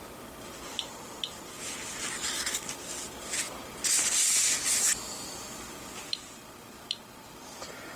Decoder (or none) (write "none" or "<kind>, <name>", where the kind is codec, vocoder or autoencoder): none